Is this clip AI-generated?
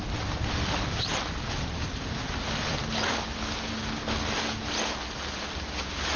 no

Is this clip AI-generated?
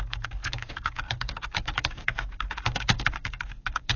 yes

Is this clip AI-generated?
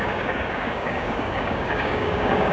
yes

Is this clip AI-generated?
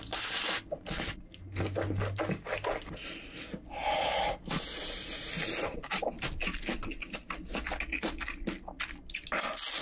no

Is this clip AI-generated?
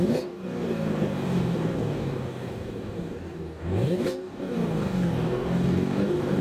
yes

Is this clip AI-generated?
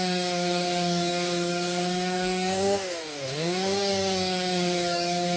yes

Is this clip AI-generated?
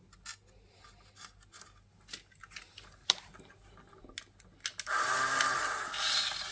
no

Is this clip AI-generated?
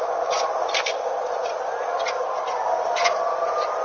no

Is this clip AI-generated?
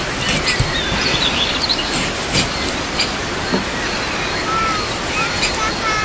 no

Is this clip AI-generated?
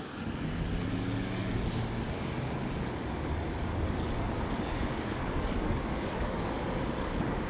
yes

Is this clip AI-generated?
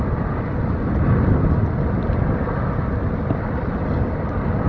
no